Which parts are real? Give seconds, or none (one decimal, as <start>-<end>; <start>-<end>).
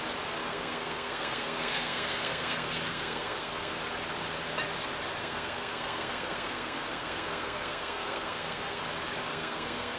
0.0-0.4; 3.7-5.2; 8.8-9.3